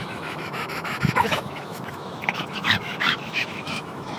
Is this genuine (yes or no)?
no